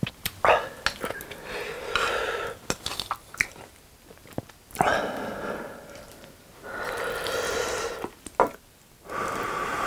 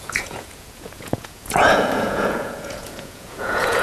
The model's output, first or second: second